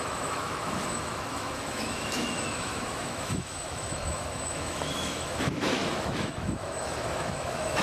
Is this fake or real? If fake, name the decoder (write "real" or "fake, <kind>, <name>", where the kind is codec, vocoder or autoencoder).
fake, autoencoder, DAC-VAE